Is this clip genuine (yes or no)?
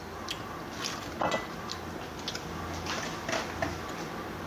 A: yes